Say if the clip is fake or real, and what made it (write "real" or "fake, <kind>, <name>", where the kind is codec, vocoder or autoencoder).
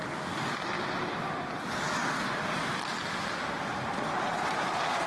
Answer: real